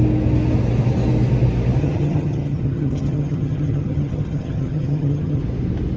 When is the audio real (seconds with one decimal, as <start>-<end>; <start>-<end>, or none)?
0.0-1.8; 5.4-6.0